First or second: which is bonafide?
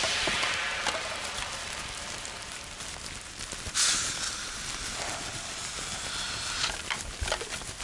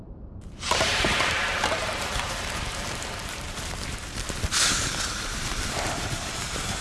first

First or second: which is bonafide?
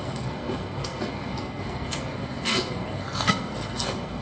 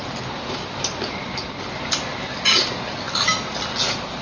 second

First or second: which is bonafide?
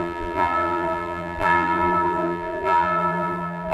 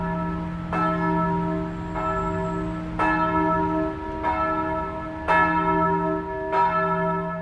second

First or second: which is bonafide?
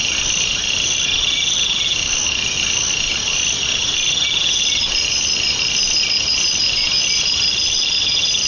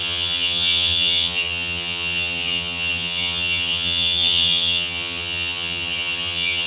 first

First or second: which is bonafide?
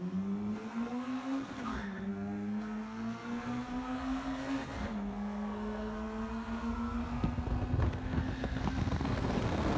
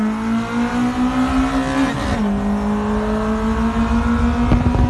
second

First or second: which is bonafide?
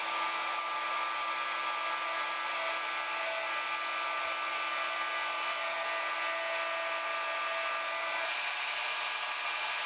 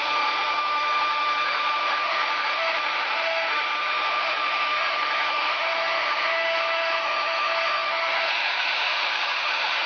first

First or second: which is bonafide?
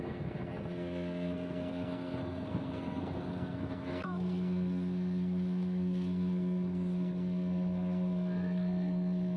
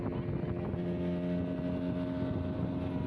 second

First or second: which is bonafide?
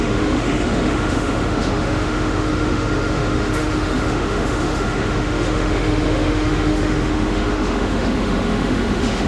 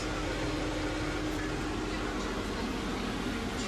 second